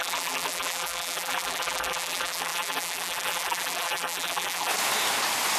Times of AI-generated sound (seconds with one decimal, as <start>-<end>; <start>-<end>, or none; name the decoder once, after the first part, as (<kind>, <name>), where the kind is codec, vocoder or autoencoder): 0.0-4.7 (vocoder, BigVGAN v2)